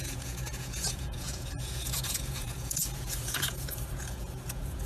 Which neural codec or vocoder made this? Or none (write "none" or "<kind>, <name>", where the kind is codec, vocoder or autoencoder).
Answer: vocoder, Vocos